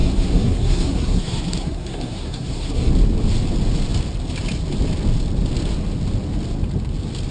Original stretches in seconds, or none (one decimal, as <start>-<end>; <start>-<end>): 2.9-7.3